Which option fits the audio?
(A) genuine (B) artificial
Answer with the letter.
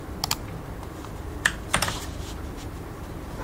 A